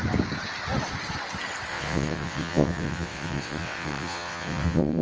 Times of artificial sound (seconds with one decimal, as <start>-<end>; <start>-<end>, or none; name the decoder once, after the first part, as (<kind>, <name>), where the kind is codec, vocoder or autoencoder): 1.7-5.0 (vocoder, WaveNeXt)